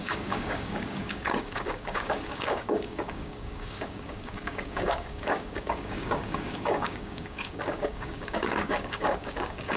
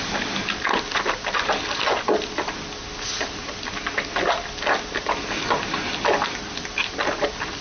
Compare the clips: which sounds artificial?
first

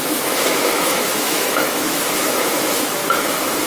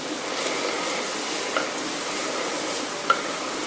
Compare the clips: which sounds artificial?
first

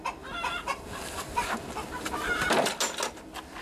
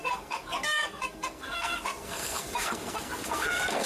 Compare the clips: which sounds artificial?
second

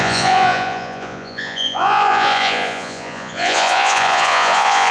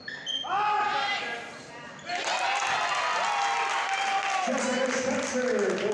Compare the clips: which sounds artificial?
first